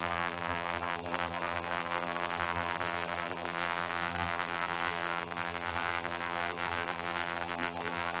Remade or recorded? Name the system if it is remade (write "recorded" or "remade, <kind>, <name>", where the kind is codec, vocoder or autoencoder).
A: remade, vocoder, BigVGAN v2